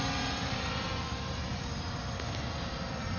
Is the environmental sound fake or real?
fake